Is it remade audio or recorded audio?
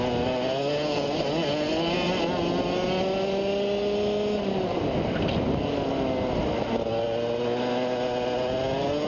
recorded